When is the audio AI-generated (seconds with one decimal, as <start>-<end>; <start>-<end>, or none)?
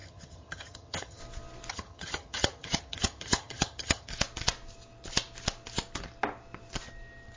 0.0-1.2; 1.7-4.1